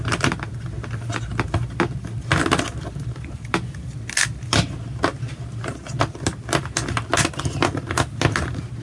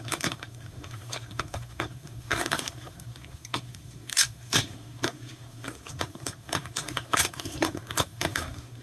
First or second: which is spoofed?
second